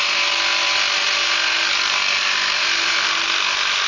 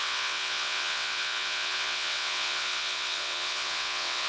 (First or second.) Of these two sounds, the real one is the first